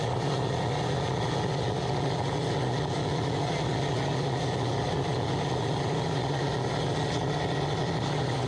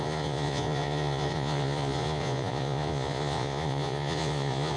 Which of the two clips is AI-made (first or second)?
second